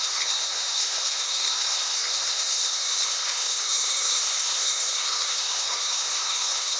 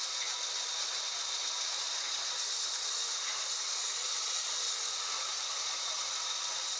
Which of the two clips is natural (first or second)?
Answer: second